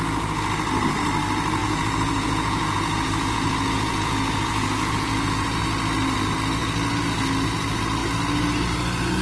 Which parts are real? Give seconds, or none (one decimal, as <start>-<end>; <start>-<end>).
0.0-1.6; 5.6-9.2